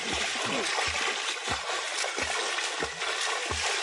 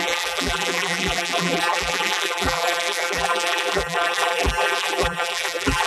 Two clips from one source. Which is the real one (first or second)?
first